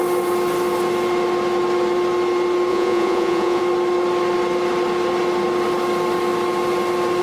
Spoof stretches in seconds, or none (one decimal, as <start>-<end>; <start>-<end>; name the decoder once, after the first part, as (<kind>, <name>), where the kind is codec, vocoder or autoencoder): 2.7-3.6 (vocoder, Vocos)